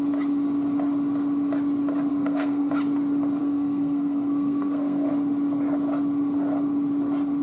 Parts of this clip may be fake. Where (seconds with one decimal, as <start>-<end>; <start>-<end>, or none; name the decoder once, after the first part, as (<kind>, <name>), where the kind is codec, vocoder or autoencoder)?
2.1-2.7 (codec, SNAC); 3.4-5.1